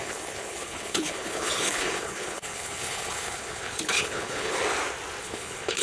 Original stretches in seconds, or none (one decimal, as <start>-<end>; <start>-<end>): 4.6-5.2